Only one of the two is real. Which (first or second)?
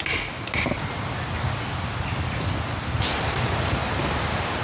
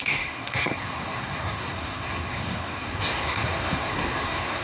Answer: first